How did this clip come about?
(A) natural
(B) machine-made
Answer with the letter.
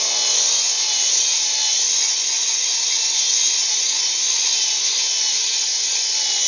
B